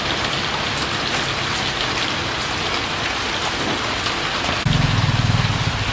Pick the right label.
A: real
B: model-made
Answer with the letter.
A